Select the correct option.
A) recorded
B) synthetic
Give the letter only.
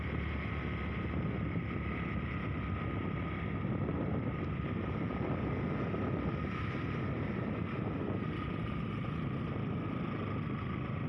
A